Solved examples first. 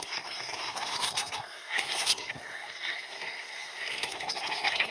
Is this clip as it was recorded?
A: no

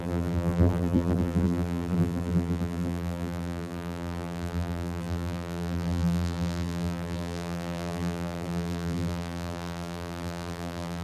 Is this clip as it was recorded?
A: no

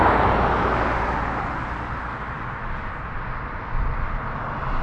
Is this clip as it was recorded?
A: yes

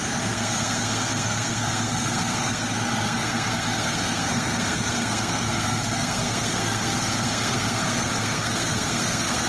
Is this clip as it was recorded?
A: no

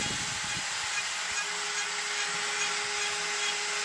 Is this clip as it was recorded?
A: yes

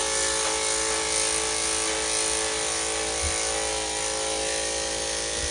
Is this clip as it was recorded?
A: yes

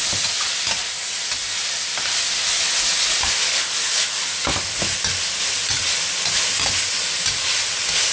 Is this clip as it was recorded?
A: yes